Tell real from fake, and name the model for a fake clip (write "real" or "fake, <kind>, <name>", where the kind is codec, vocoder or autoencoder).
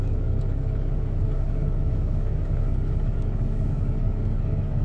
fake, codec, DAC